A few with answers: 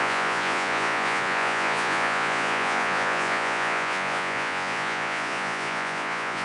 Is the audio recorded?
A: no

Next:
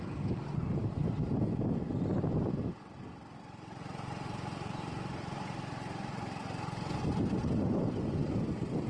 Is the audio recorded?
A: no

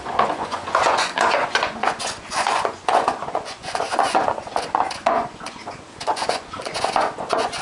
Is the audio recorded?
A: no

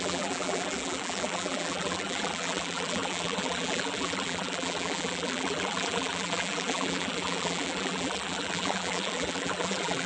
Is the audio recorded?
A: no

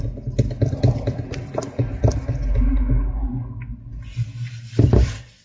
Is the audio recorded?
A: yes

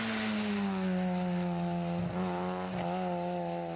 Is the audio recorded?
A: yes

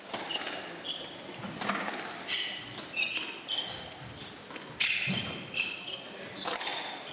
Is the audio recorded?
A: yes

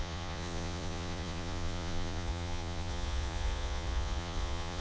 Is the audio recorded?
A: no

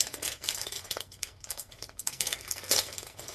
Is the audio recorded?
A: no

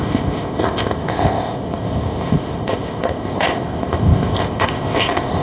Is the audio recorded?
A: no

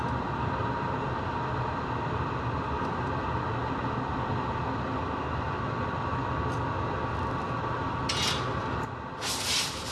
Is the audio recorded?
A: yes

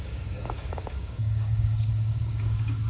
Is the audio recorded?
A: no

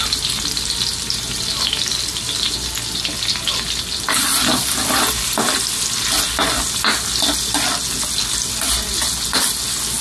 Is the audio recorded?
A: yes